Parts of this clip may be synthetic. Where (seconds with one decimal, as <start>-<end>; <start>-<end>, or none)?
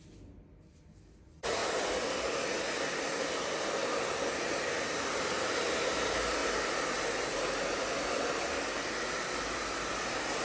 none